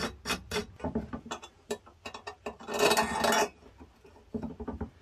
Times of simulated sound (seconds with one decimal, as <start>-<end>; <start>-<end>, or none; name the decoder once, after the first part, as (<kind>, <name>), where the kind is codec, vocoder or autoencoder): none